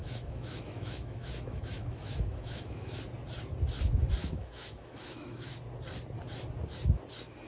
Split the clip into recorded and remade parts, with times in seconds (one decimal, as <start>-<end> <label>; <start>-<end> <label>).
0.0-3.0 remade; 3.0-4.2 recorded; 4.2-5.5 remade; 5.5-7.5 recorded